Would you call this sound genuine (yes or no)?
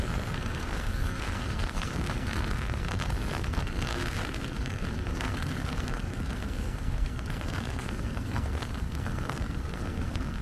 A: no